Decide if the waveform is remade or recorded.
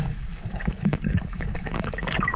remade